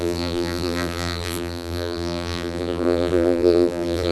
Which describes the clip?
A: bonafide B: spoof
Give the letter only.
B